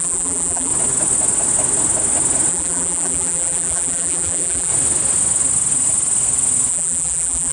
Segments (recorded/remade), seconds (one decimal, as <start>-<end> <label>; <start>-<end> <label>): 0.0-0.7 remade; 0.7-2.5 recorded; 2.5-4.7 remade; 4.7-6.7 recorded; 6.7-7.5 remade